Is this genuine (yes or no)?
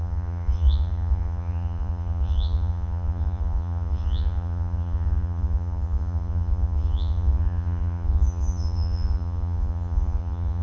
no